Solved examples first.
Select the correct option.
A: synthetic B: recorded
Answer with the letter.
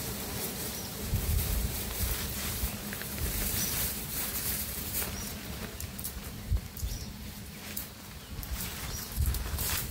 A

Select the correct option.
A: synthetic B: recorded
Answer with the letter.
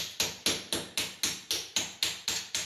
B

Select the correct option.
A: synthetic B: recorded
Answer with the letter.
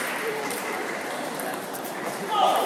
A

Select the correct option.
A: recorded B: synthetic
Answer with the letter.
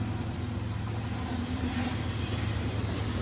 A